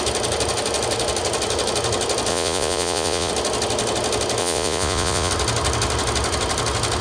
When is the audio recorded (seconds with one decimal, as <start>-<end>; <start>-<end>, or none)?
0.0-2.3; 3.3-4.4; 5.3-7.0